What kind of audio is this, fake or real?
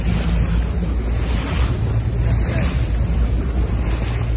real